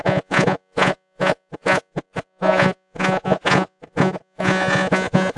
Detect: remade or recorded remade